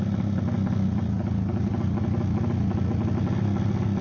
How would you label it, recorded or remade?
recorded